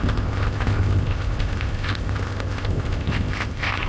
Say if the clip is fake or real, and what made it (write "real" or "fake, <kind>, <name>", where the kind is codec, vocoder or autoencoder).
fake, codec, ZipCodec